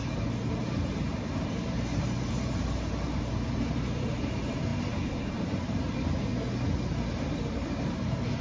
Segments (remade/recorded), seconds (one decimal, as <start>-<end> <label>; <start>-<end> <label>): 0.0-6.3 remade; 6.3-7.1 recorded; 7.1-8.4 remade